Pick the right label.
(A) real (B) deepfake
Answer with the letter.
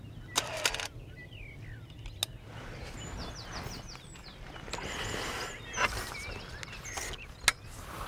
A